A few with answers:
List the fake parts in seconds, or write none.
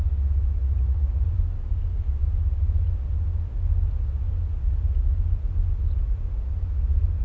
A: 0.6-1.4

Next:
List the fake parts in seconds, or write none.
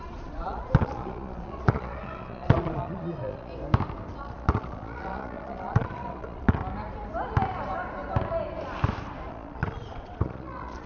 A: 0.0-3.5; 4.2-6.6; 9.3-10.9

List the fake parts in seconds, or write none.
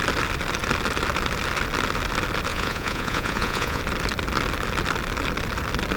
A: 2.5-3.8